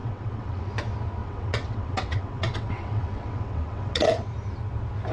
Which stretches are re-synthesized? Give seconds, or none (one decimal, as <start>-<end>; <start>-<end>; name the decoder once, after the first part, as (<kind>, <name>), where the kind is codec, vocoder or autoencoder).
0.0-0.7 (vocoder, WaveNeXt); 1.2-4.3